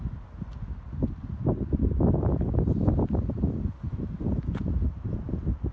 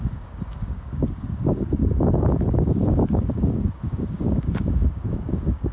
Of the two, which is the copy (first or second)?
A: second